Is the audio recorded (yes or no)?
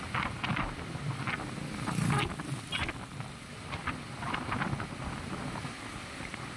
yes